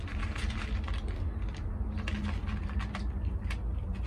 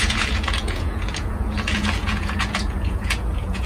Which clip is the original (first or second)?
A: first